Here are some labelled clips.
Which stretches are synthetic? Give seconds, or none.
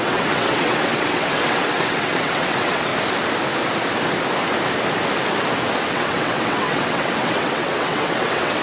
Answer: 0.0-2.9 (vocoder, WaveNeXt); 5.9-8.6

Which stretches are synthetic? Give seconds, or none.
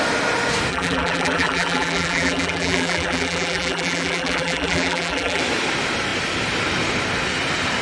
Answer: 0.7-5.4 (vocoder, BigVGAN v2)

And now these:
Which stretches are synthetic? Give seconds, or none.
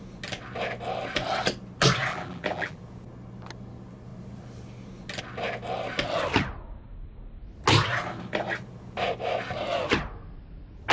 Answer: 2.1-2.8 (vocoder, BigVGAN v2)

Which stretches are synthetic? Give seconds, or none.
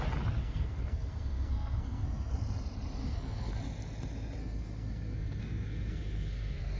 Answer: 0.4-2.3 (codec, SNAC); 3.0-3.5; 4.4-6.8